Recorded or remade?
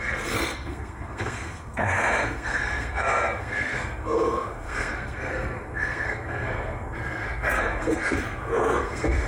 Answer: remade